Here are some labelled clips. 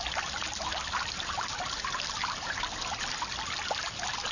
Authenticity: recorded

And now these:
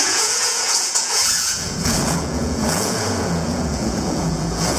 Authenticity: remade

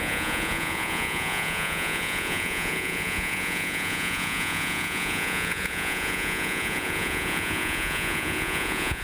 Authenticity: remade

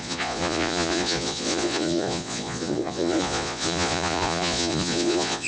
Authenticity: remade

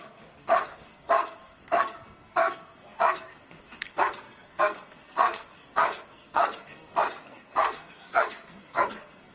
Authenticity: remade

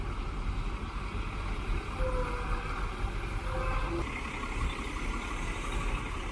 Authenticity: recorded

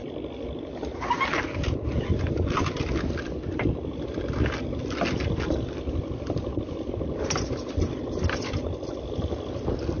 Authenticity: recorded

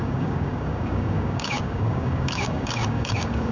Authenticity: remade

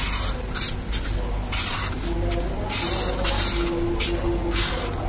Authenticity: recorded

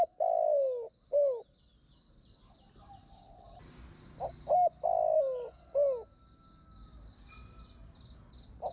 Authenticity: recorded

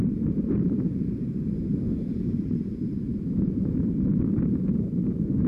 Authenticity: remade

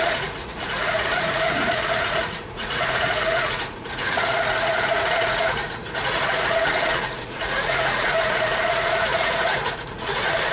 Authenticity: remade